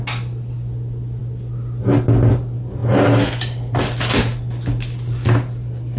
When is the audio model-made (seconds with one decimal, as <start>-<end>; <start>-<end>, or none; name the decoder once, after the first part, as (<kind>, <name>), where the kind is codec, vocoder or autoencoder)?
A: none